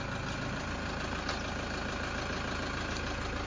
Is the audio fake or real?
real